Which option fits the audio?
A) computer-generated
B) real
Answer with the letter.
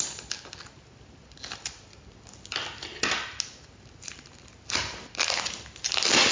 B